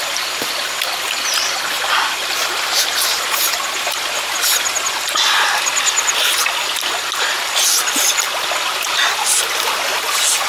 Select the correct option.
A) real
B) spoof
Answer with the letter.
A